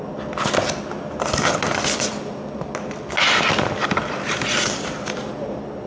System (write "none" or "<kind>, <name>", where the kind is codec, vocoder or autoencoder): none